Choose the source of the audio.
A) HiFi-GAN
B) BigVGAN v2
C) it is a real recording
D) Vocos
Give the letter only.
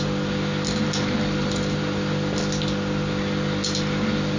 C